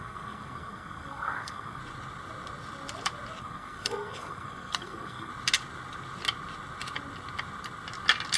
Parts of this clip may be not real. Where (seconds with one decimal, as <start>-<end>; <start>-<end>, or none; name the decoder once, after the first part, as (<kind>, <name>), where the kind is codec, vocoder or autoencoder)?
0.0-1.8 (codec, SNAC); 3.4-5.3